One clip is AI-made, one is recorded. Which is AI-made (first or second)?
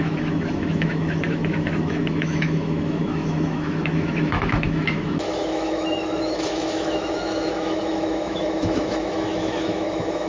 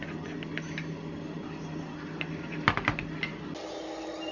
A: first